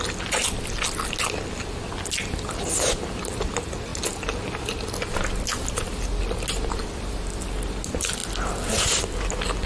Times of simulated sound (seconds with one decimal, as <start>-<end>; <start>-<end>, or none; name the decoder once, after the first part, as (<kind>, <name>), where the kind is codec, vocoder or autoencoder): none